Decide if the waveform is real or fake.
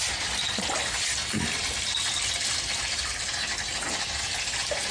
real